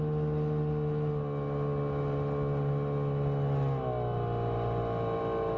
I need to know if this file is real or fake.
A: real